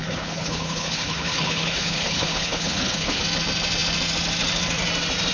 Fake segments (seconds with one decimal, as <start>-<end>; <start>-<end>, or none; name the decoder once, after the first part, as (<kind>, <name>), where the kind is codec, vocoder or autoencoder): 0.0-3.2 (codec, HILCodec)